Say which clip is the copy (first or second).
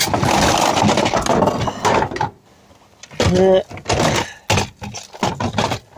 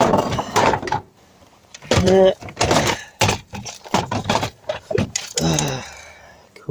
second